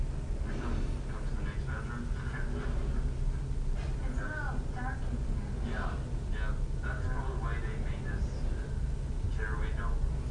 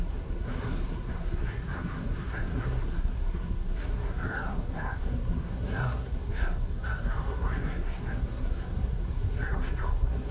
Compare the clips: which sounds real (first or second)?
first